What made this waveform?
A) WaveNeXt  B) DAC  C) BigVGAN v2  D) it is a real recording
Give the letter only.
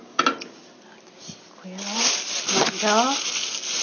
D